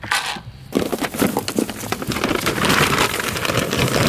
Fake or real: real